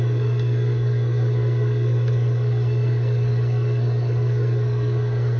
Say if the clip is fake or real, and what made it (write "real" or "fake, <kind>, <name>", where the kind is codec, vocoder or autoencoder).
fake, codec, SNAC